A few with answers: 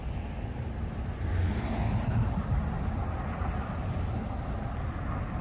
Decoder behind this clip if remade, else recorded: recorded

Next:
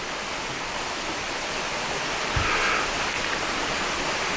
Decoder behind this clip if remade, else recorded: recorded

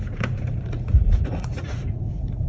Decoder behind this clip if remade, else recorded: remade, vocoder, Vocos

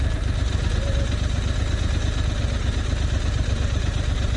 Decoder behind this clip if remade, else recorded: recorded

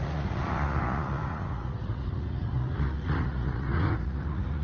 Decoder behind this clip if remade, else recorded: remade, vocoder, Vocos